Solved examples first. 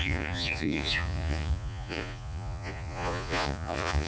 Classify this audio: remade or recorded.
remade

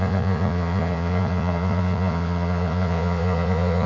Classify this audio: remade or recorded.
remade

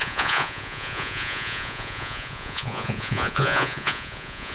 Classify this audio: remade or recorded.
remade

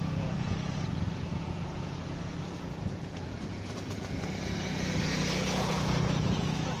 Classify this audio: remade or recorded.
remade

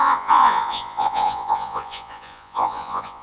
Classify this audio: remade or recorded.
remade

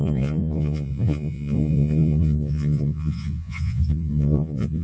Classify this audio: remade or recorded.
remade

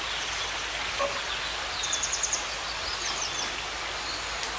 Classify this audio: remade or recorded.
recorded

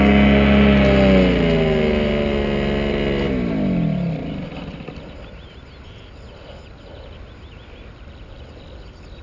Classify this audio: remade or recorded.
recorded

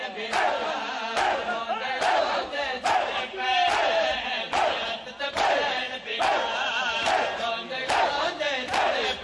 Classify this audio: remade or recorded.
recorded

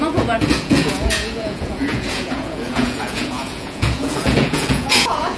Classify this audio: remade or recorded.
remade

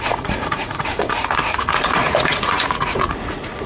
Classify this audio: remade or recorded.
remade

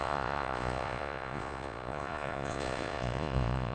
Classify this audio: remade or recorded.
remade